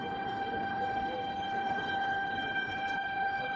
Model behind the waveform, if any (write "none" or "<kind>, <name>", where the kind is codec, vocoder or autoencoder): codec, HILCodec